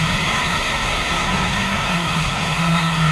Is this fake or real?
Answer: fake